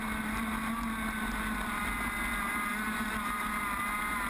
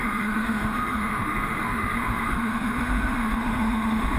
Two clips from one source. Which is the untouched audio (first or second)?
first